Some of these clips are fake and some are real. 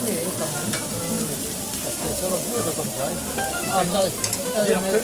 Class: fake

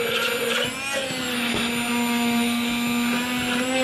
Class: real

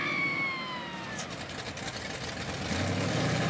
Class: real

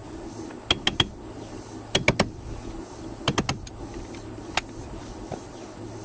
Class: real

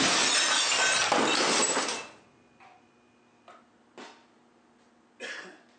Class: real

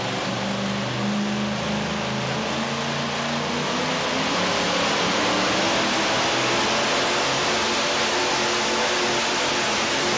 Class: real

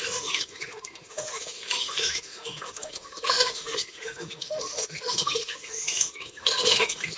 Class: fake